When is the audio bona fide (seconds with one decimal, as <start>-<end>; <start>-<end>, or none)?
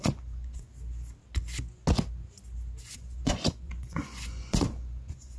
0.7-2.9